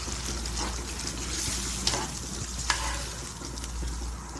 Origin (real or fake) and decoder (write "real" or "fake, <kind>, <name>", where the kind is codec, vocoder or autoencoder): real